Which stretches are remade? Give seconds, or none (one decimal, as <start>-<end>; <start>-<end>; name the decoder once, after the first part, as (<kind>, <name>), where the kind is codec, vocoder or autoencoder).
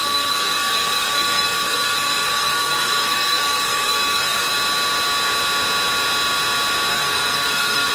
0.0-4.5 (codec, SNAC); 6.9-7.9